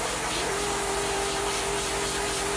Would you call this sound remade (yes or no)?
no